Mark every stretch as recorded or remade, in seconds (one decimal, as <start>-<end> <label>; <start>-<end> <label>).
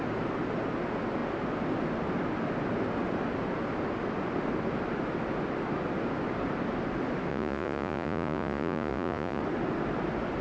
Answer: 0.0-7.3 recorded; 7.3-9.4 remade; 9.4-10.4 recorded